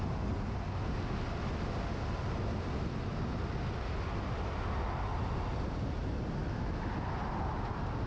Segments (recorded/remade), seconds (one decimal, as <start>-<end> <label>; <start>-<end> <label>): 0.0-6.4 recorded; 6.4-6.9 remade; 6.9-8.1 recorded